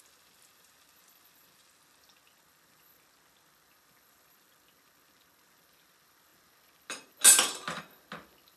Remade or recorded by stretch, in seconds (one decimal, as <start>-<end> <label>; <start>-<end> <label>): 0.0-8.6 recorded